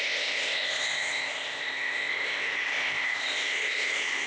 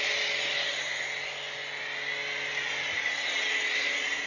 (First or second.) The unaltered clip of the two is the second